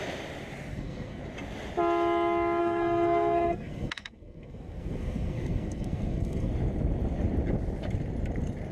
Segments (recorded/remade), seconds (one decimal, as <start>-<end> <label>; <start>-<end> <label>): 0.0-0.7 recorded; 0.7-1.2 remade; 1.2-2.6 recorded; 2.6-6.5 remade; 6.5-8.7 recorded